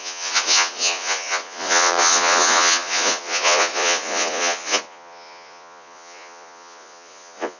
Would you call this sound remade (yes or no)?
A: yes